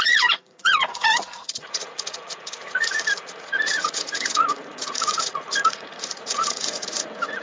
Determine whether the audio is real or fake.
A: fake